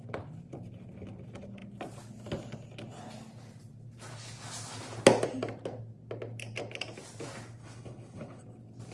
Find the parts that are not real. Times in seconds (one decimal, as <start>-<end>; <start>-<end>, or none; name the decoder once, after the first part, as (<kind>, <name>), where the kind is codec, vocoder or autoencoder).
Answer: 7.6-8.4 (codec, HILCodec)